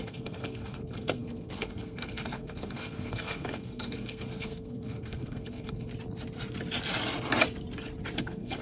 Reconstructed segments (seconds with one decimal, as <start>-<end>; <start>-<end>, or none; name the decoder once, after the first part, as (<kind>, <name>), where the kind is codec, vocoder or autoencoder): 0.0-5.9 (codec, SNAC); 8.2-8.6